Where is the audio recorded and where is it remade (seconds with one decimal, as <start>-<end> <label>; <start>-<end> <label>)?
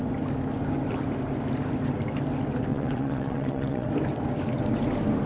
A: 0.0-2.7 recorded; 2.7-3.9 remade; 3.9-5.3 recorded